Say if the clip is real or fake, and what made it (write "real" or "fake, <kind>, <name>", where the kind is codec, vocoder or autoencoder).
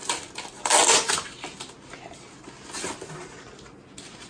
real